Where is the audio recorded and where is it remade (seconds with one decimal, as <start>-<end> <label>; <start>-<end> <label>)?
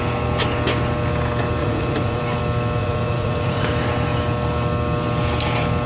0.0-1.6 recorded; 1.6-2.2 remade; 2.2-2.8 recorded; 2.8-3.7 remade; 3.7-5.9 recorded